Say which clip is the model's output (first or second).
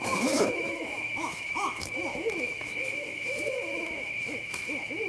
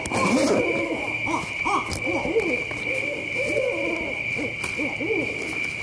first